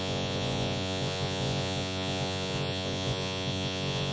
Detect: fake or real fake